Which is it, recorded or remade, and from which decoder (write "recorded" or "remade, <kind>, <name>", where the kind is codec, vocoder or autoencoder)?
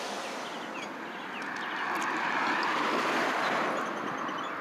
recorded